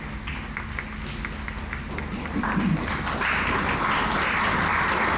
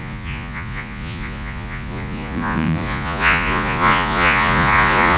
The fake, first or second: second